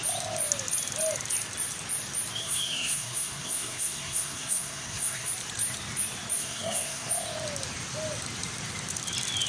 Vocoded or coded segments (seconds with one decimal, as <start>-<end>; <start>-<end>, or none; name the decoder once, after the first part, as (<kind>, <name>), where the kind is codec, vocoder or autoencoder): 2.4-5.3 (codec, SNAC); 6.4-7.1